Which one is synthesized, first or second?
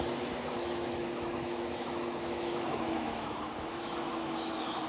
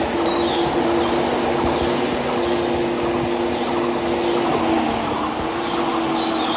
first